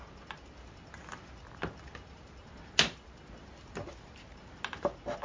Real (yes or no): yes